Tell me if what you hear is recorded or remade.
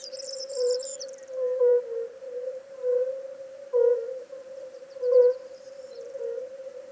remade